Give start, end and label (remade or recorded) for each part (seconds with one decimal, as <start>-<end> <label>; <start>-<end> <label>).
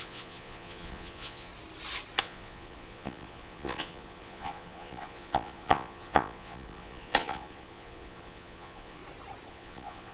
0.0-1.5 remade; 1.5-2.2 recorded; 2.2-9.0 remade; 9.0-9.5 recorded; 9.5-10.1 remade